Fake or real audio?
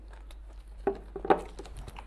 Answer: real